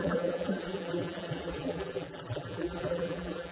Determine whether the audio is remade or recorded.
remade